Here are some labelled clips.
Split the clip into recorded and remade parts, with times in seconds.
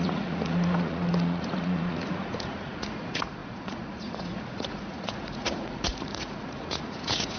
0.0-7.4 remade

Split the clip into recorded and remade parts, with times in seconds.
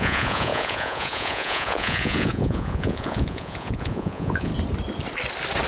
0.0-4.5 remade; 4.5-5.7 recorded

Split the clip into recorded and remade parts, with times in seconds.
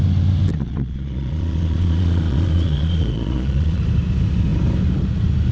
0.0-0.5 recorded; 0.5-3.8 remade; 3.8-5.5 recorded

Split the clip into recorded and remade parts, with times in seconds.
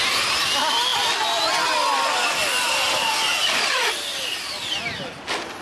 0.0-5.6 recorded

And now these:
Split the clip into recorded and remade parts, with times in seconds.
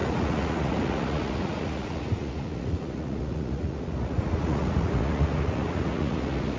0.0-6.6 remade